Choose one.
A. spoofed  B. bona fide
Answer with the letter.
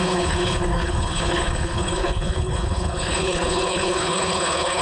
A